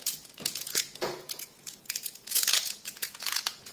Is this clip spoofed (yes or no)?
yes